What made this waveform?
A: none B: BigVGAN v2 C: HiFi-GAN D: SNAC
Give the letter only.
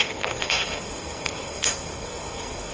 D